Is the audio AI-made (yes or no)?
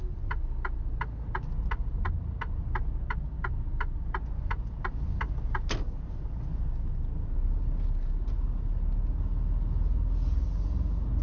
no